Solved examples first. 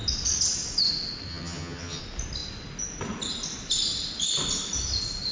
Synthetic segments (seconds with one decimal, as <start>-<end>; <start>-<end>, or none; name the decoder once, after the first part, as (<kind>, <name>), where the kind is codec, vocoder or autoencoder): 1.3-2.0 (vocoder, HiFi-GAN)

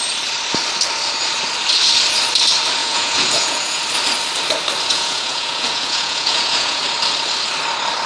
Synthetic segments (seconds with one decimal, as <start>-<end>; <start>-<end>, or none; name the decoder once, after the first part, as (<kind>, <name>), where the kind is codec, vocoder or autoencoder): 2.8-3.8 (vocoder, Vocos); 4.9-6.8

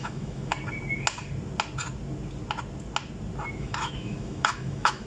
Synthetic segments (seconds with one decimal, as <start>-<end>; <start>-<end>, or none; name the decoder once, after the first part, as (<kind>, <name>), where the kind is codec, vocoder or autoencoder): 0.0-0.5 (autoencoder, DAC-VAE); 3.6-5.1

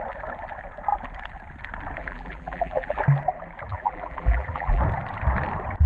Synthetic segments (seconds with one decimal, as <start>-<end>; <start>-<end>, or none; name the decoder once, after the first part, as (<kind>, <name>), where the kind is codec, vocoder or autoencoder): 2.0-3.0 (vocoder, BigVGAN v2); 3.7-4.8

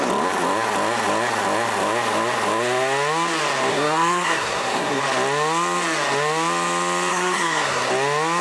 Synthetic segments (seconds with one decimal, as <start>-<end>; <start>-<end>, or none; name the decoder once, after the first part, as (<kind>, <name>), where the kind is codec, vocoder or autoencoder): 3.7-5.0 (codec, SNAC); 7.1-7.9

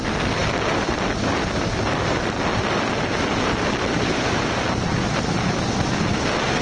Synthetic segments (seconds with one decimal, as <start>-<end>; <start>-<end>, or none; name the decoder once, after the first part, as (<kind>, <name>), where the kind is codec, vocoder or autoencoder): 0.4-1.1 (vocoder, BigVGAN v2); 2.5-4.4

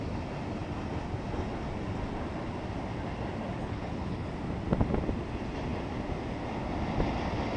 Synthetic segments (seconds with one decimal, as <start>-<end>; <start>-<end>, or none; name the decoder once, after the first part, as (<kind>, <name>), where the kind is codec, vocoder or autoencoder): 3.6-4.3 (codec, HILCodec)